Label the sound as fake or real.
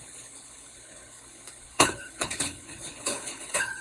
fake